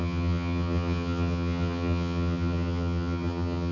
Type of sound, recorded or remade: remade